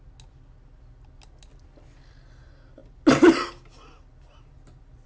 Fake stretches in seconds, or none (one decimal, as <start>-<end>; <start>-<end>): none